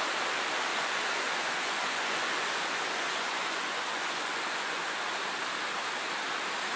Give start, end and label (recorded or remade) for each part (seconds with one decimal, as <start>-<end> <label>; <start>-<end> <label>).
0.0-0.7 recorded; 0.7-4.8 remade; 4.8-6.8 recorded